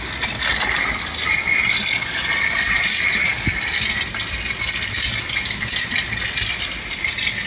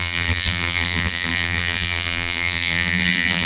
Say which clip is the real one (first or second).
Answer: first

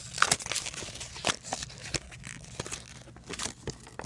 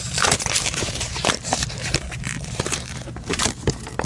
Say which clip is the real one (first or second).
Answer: first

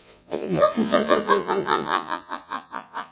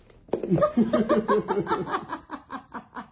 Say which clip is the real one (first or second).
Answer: second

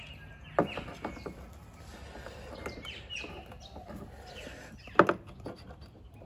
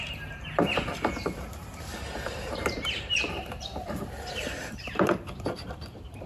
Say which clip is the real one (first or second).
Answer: first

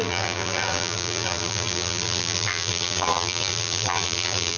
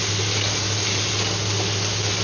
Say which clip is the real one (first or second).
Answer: second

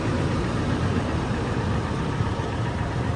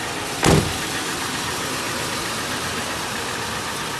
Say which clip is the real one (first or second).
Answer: second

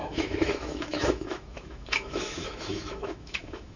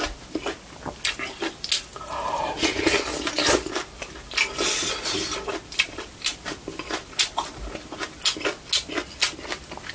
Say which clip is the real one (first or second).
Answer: second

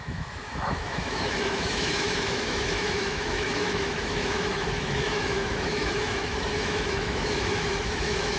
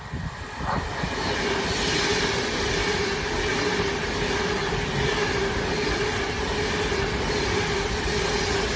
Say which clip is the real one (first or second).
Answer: second